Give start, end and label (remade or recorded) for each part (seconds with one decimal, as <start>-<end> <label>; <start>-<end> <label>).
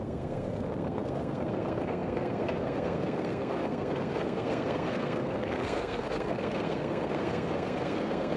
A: 0.0-8.4 remade